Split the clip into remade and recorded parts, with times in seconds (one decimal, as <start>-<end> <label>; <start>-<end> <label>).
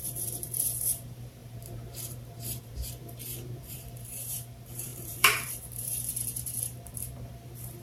0.0-7.8 remade